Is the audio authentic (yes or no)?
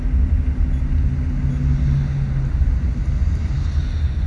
yes